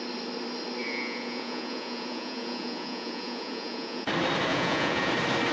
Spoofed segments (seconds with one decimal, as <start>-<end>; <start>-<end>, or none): 0.8-4.1; 4.5-5.1